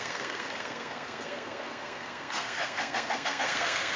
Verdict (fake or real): fake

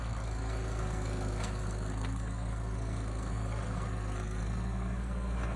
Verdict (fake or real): fake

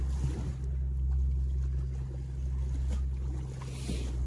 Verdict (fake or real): real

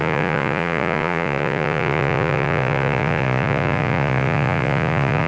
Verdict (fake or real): fake